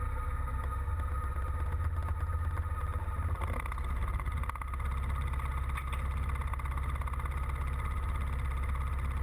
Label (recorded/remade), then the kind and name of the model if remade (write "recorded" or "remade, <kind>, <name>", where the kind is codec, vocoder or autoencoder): recorded